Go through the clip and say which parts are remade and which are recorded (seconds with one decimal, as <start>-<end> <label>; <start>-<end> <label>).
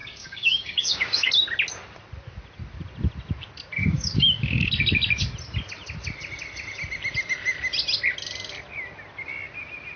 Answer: 0.0-1.3 remade; 1.3-3.8 recorded; 3.8-4.7 remade; 4.7-10.0 recorded